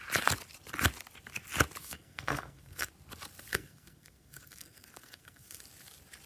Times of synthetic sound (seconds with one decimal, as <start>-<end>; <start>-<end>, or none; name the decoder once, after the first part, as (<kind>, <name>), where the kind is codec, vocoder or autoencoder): 1.8-2.9 (codec, SNAC); 3.5-5.6